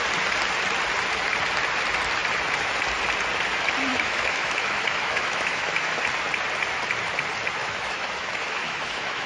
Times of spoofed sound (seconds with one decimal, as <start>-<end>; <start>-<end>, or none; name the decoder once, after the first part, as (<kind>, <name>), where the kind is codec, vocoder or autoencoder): 3.9-6.0 (autoencoder, DAC-VAE); 7.6-9.3